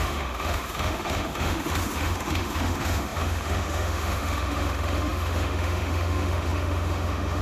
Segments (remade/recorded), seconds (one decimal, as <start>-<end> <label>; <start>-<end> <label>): 0.0-7.4 remade